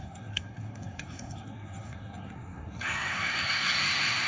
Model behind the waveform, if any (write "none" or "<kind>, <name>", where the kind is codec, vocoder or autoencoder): codec, SNAC